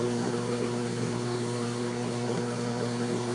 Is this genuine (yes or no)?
no